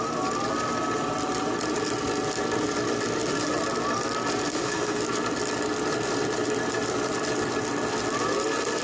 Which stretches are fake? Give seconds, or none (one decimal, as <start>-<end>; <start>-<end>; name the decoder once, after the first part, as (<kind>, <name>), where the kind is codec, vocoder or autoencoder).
4.5-5.0 (autoencoder, DAC-VAE)